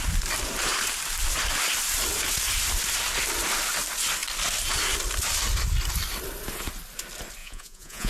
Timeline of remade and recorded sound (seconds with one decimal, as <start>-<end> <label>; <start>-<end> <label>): 0.0-7.4 recorded; 7.4-8.1 remade